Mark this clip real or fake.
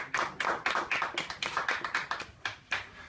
real